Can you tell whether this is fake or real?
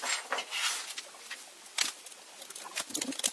real